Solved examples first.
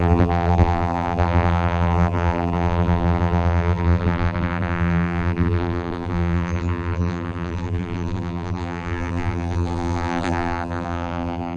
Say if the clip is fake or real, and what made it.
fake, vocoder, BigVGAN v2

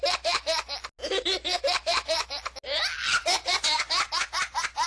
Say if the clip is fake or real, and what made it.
real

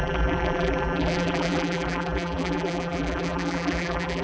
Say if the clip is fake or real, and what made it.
fake, vocoder, BigVGAN v2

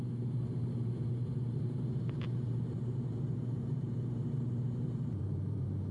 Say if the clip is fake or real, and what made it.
fake, vocoder, BigVGAN v2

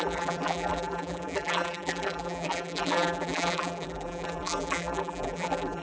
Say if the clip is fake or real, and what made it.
fake, vocoder, BigVGAN v2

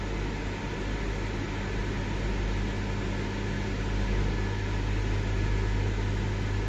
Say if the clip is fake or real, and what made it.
real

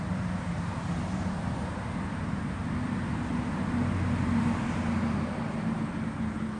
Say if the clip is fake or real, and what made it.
real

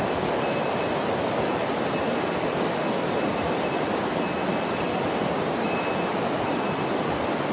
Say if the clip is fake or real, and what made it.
real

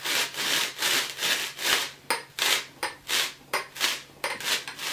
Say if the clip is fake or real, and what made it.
real